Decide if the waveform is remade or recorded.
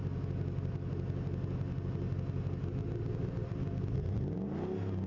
recorded